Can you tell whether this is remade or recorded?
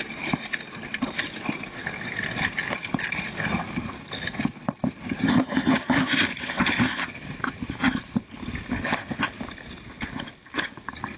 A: recorded